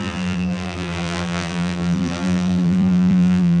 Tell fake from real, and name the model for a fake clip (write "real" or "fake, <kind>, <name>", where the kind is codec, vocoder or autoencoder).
fake, vocoder, BigVGAN v2